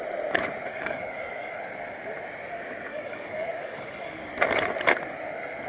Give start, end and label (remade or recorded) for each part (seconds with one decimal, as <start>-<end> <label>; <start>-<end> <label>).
0.0-0.7 recorded; 0.7-1.6 remade; 1.6-2.9 recorded; 2.9-4.3 remade; 4.3-5.7 recorded